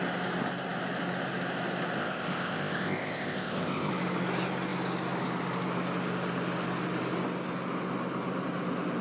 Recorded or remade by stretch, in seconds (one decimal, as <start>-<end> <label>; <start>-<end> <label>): 0.0-2.0 recorded; 2.0-3.9 remade; 3.9-9.0 recorded